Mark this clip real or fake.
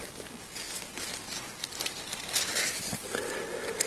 real